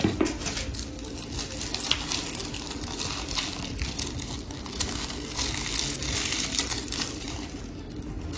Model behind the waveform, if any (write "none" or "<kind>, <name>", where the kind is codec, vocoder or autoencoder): none